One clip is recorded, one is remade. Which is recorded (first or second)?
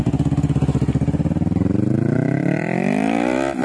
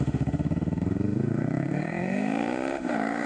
first